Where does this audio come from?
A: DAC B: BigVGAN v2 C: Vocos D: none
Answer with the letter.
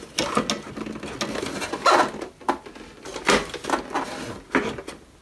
D